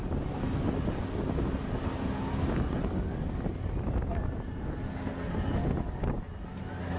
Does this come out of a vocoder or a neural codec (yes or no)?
no